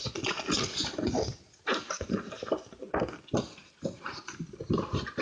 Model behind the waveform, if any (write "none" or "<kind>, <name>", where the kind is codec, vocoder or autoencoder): none